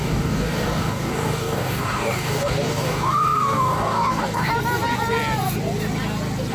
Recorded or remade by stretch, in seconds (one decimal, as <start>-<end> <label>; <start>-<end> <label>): 0.0-4.5 remade; 4.5-6.5 recorded